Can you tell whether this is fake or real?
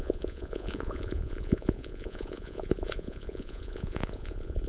fake